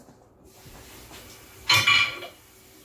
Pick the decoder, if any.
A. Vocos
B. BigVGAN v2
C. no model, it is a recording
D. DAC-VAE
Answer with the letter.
C